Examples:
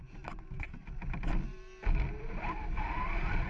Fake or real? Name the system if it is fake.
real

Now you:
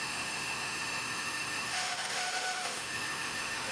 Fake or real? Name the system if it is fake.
fake, autoencoder, DAC-VAE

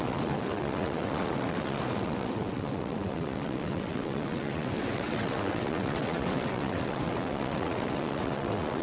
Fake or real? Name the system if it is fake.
fake, vocoder, WaveNeXt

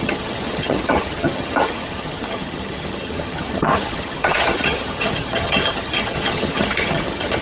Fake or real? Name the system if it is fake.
fake, vocoder, HiFi-GAN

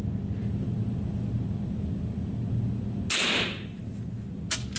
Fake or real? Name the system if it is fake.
real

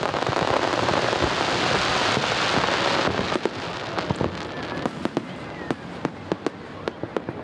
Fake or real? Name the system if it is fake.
real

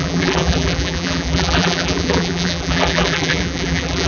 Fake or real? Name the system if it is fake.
fake, vocoder, BigVGAN v2